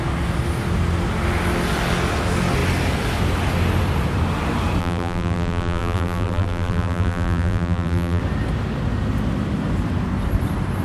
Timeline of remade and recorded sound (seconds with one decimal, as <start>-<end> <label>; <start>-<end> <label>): 0.0-4.8 recorded; 4.8-8.2 remade; 8.2-10.8 recorded